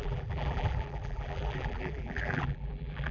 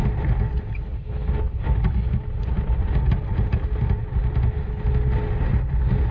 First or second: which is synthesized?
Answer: first